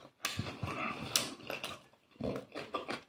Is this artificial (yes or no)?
no